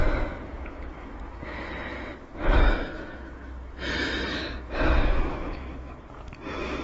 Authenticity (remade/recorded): remade